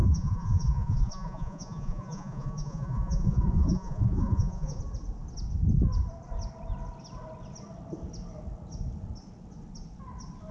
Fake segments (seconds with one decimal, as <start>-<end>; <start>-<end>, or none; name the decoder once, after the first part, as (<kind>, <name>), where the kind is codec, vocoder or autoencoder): 0.0-4.8 (vocoder, Vocos)